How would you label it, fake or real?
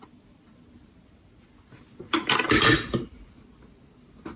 real